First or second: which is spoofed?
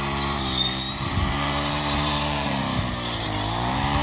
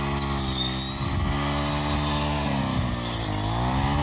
first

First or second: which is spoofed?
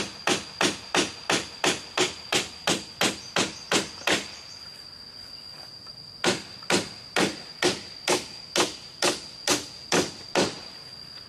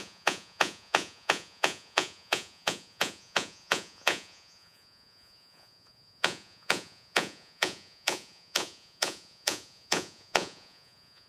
second